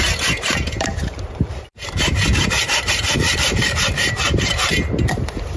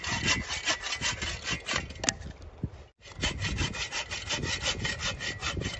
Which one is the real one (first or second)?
second